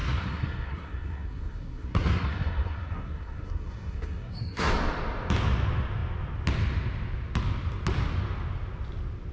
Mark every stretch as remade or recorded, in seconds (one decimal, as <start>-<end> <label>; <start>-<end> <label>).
0.0-4.7 remade; 4.7-9.3 recorded